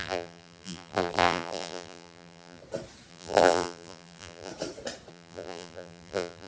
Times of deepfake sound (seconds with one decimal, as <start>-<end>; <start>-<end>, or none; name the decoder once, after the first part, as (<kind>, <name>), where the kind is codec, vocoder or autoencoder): 0.0-2.6 (vocoder, BigVGAN v2); 3.1-4.5; 5.1-6.5